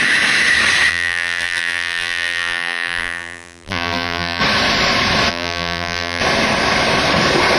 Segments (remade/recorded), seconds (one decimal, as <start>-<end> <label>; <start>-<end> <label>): 0.0-0.9 recorded; 0.9-4.4 remade; 4.4-5.3 recorded; 5.3-6.2 remade; 6.2-7.6 recorded